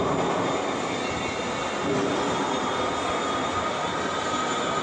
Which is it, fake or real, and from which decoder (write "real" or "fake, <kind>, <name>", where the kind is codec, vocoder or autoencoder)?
real